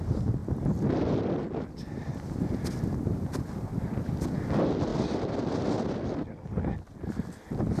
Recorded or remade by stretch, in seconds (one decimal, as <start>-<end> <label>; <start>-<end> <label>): 0.0-7.8 recorded